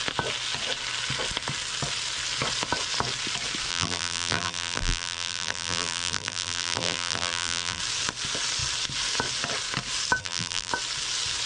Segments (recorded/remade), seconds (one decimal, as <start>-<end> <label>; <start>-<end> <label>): 0.0-3.7 recorded; 3.7-7.8 remade; 7.8-10.2 recorded; 10.2-10.7 remade; 10.7-11.5 recorded